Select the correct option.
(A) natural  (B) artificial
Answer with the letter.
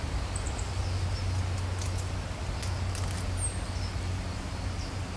A